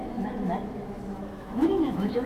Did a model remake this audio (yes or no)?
yes